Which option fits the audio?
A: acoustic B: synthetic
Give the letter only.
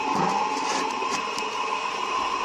B